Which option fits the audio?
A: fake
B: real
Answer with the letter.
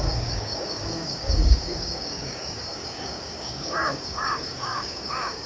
A